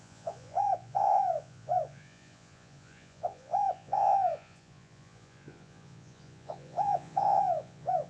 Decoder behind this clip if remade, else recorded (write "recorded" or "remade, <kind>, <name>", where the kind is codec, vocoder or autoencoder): remade, vocoder, Vocos